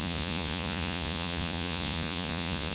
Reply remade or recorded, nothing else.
remade